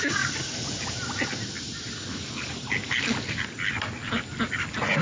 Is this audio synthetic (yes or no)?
no